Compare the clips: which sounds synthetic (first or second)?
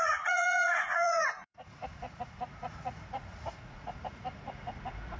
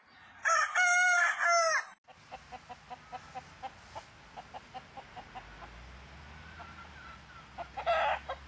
first